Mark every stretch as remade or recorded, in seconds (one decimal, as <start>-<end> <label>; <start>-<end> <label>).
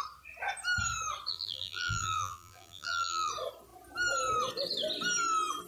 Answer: 0.0-1.3 recorded; 1.3-3.3 remade; 3.3-5.7 recorded